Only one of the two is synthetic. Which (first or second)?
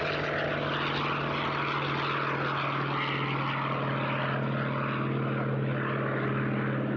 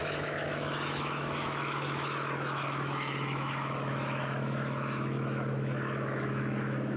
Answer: second